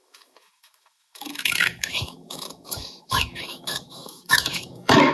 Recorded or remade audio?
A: remade